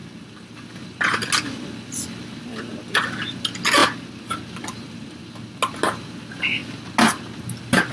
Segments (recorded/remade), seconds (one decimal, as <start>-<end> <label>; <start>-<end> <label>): 0.0-7.9 recorded